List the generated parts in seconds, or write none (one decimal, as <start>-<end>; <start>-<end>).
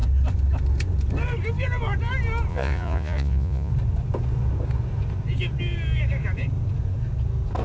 2.5-3.7